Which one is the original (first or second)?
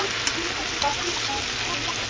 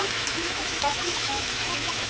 first